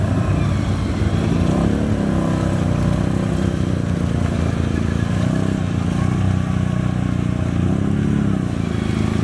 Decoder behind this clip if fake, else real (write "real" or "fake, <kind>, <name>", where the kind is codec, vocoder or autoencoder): real